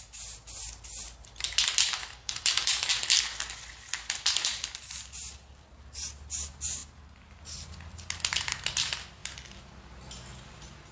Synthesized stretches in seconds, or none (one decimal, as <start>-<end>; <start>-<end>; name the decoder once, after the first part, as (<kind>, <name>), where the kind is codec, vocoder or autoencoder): 2.0-2.9 (codec, DAC)